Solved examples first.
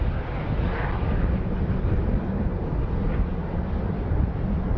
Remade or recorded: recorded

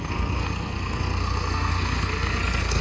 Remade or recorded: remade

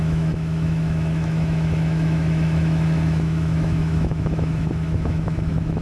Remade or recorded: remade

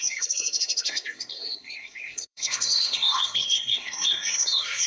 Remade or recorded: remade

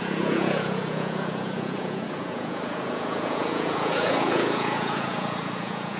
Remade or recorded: remade